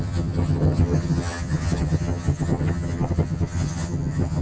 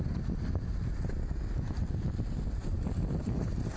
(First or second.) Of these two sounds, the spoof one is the first